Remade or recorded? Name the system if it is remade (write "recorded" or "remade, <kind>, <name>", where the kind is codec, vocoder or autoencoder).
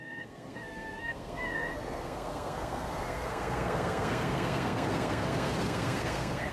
remade, codec, SNAC